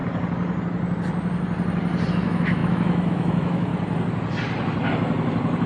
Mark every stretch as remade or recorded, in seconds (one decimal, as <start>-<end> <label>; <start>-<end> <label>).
0.0-2.1 recorded; 2.1-3.7 remade; 3.7-5.7 recorded